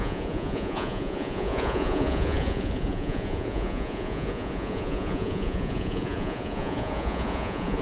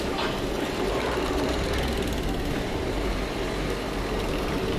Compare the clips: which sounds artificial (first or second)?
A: first